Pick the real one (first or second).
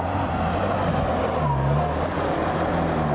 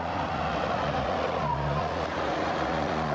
first